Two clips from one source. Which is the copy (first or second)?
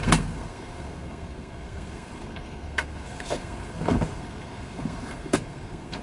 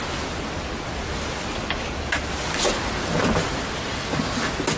first